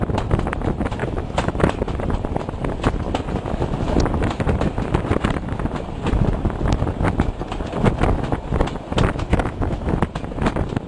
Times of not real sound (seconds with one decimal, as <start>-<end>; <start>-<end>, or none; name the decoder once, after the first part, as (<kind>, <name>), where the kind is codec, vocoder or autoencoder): 1.0-1.8 (autoencoder, DAC-VAE); 9.3-9.9